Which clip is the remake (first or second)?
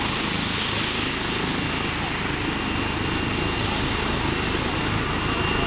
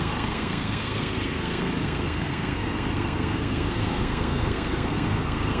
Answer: second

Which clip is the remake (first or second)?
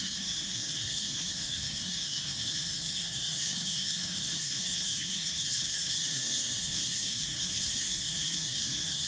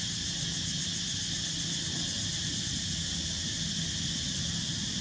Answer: first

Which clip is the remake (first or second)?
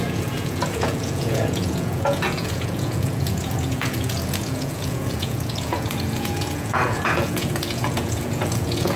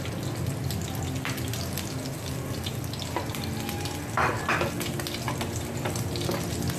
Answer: first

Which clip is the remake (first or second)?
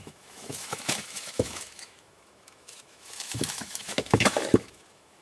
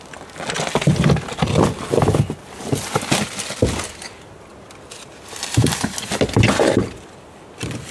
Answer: first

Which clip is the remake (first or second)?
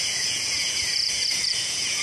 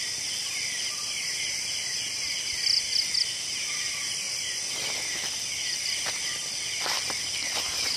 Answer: first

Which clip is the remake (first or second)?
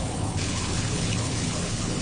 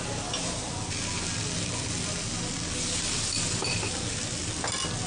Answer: first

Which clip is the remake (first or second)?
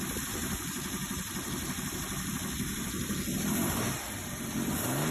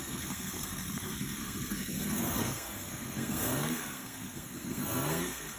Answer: second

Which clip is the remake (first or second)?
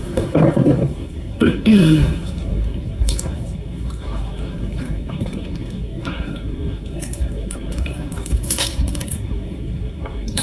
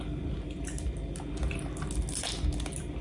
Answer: first